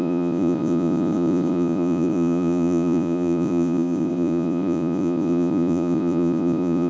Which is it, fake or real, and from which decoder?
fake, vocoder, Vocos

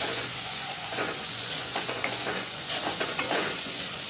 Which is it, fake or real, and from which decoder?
fake, vocoder, Vocos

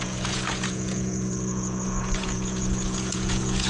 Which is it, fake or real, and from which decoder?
fake, vocoder, Vocos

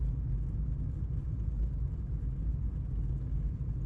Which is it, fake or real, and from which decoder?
real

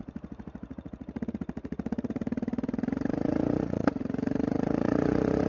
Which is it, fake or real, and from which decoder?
fake, vocoder, Vocos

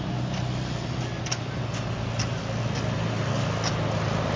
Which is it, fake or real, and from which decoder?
real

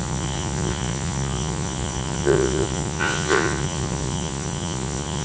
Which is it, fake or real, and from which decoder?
fake, vocoder, Vocos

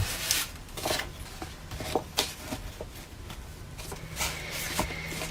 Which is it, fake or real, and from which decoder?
real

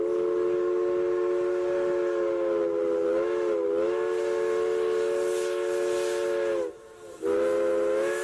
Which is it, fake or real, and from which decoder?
real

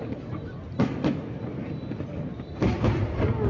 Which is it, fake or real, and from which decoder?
real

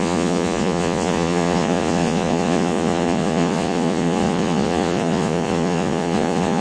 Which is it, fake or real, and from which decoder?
fake, vocoder, Vocos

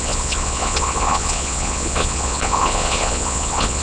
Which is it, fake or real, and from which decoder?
fake, vocoder, Vocos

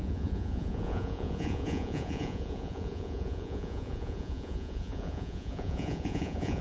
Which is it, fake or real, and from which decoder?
fake, vocoder, Vocos